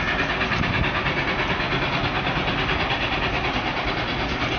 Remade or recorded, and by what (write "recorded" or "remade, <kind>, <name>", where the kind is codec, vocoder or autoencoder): recorded